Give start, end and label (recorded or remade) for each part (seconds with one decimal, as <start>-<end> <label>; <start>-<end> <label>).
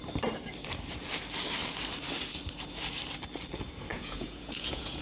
0.0-3.9 recorded; 3.9-5.0 remade